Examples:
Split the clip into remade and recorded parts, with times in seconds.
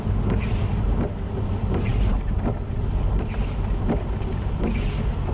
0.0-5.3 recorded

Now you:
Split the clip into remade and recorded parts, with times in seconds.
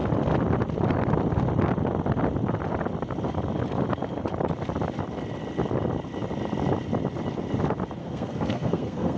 0.0-8.0 recorded; 8.0-9.2 remade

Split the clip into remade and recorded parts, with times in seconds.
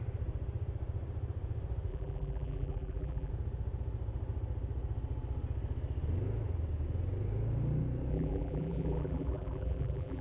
0.0-1.9 recorded; 1.9-3.3 remade; 3.3-8.1 recorded; 8.1-10.2 remade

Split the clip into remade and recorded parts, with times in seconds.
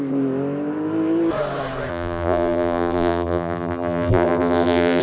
0.0-1.9 recorded; 1.9-5.0 remade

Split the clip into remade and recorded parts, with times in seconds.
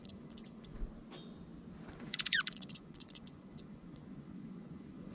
0.0-0.7 remade; 0.7-2.0 recorded; 2.0-5.1 remade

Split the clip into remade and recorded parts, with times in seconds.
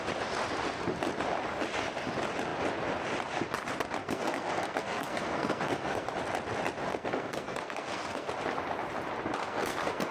0.0-4.0 recorded; 4.0-6.1 remade; 6.1-6.9 recorded; 6.9-8.3 remade; 8.3-9.4 recorded; 9.4-10.1 remade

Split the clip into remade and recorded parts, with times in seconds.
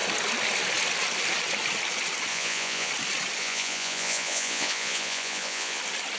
0.0-2.3 recorded; 2.3-2.9 remade; 2.9-3.4 recorded; 3.4-5.8 remade; 5.8-6.2 recorded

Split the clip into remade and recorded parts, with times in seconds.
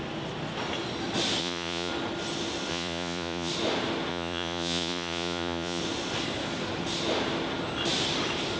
0.0-1.4 recorded; 1.4-1.9 remade; 1.9-2.7 recorded; 2.7-3.5 remade; 3.5-4.1 recorded; 4.1-5.8 remade; 5.8-8.6 recorded